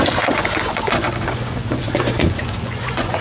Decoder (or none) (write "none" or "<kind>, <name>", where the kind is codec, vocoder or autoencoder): vocoder, Vocos